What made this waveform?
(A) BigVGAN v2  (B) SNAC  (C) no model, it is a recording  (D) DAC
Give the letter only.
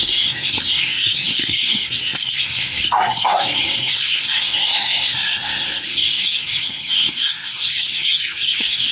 B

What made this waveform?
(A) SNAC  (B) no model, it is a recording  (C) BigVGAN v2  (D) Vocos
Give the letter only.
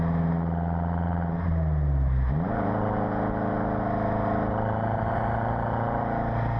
B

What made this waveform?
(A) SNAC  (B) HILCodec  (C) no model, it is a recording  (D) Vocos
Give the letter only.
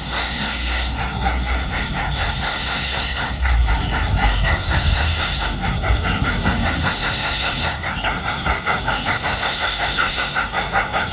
A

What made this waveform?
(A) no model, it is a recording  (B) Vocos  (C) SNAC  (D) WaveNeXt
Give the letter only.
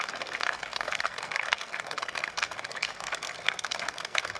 C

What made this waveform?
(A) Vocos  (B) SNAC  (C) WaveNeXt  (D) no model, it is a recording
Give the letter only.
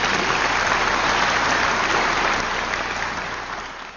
D